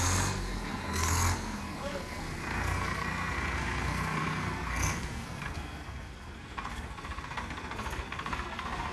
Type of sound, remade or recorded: remade